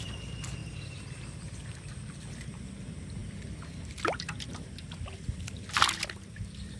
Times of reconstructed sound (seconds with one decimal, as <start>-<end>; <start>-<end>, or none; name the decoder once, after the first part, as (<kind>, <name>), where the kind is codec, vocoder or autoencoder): none